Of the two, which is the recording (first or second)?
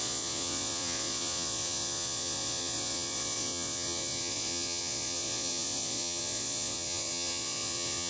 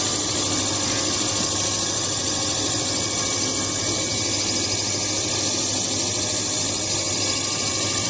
second